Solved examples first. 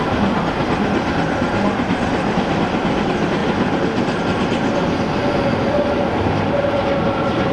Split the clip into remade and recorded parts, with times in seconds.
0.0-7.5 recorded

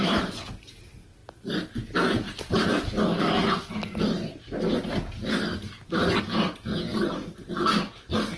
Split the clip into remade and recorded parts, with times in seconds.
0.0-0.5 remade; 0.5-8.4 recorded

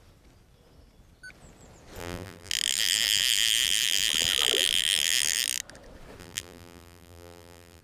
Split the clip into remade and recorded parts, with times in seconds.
0.0-2.0 recorded; 2.0-2.5 remade; 2.5-6.2 recorded; 6.2-7.8 remade

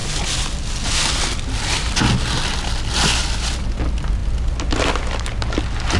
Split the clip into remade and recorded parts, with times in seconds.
0.0-6.0 recorded